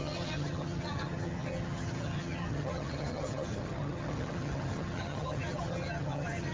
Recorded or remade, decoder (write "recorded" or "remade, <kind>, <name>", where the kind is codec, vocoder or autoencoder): remade, vocoder, HiFi-GAN